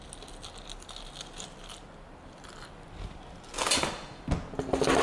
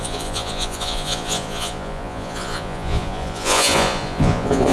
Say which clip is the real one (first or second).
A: first